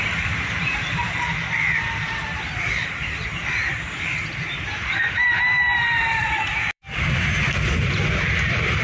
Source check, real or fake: fake